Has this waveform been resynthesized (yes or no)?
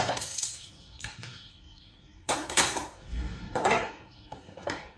yes